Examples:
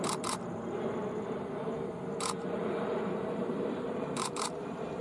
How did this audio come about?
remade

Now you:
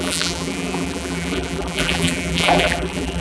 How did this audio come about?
remade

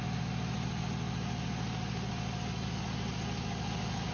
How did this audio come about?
recorded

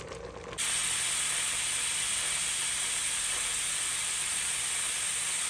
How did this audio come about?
recorded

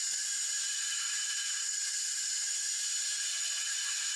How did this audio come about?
remade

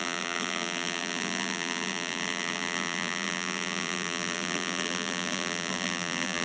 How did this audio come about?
remade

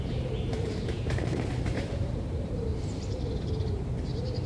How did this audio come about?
remade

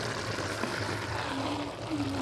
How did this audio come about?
recorded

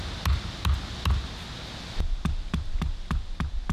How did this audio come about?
recorded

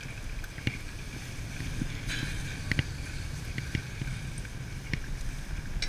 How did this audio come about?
recorded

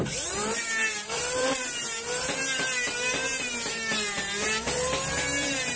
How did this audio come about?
remade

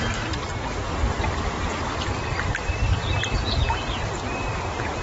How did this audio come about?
recorded